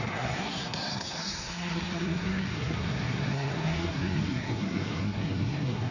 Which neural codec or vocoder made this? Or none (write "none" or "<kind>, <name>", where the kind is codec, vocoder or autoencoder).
codec, SNAC